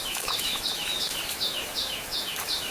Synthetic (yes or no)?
yes